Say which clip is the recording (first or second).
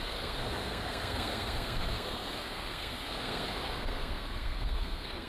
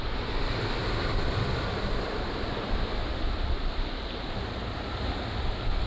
second